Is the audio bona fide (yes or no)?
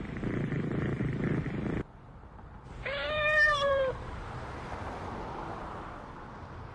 no